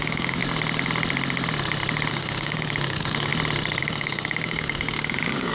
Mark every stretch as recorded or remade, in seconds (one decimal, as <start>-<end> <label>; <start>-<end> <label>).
0.0-0.4 remade; 0.4-2.1 recorded; 2.1-3.3 remade; 3.3-3.8 recorded; 3.8-5.5 remade